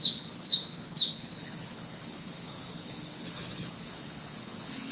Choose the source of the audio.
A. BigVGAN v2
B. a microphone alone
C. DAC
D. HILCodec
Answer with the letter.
D